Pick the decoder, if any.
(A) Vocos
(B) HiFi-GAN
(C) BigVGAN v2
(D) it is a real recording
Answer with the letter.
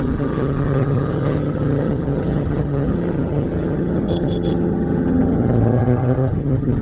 B